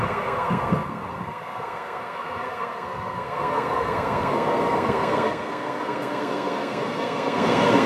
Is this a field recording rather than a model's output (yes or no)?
no